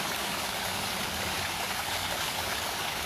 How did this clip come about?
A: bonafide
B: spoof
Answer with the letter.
B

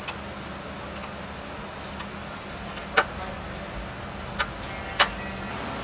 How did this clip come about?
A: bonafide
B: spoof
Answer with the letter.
A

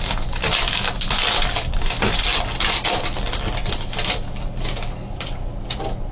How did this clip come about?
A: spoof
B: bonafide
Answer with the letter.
B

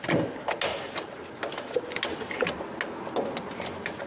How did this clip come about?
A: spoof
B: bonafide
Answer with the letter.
B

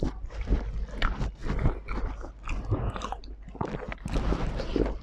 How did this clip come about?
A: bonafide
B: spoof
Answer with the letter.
A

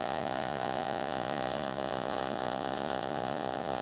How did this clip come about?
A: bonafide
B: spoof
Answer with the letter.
B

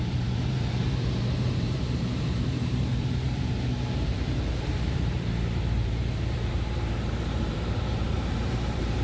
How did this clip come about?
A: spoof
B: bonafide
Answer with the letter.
A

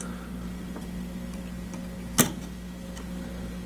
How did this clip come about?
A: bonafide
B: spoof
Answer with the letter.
A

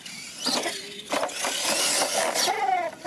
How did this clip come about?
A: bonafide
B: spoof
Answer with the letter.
A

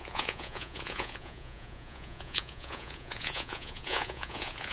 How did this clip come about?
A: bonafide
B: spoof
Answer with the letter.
B